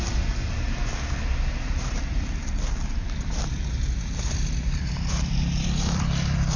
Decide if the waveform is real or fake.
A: fake